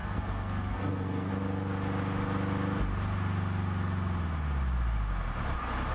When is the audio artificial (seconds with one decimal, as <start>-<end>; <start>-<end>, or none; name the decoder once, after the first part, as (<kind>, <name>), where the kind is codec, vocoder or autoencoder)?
0.0-1.3 (codec, SNAC)